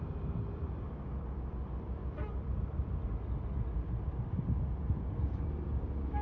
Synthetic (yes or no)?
no